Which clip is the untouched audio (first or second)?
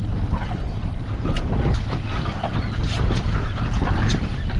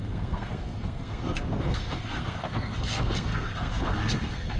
first